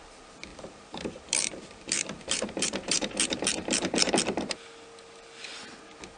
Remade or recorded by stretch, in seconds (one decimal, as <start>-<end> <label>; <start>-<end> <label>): 0.0-0.5 recorded; 0.5-4.1 remade; 4.1-6.2 recorded